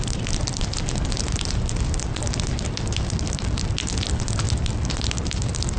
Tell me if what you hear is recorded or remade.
recorded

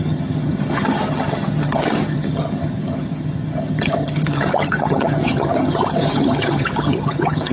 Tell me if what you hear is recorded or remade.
remade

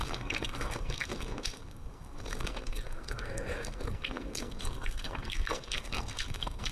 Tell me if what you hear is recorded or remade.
remade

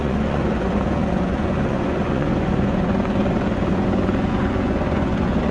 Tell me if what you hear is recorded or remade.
remade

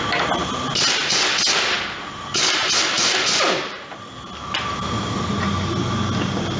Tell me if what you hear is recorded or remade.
recorded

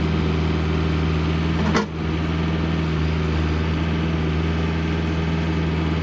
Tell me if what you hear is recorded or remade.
recorded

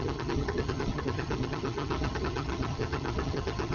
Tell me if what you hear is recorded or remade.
remade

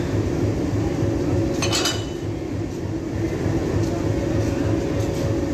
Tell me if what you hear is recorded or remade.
recorded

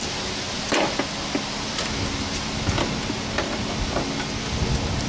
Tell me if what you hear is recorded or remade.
recorded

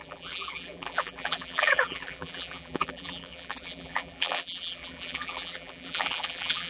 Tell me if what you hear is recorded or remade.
remade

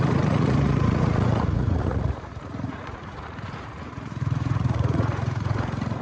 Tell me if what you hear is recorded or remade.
remade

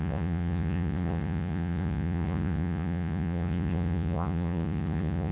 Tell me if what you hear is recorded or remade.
remade